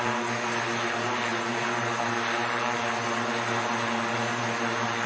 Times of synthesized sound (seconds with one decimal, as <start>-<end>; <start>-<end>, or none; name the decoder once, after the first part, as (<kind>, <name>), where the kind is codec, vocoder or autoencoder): none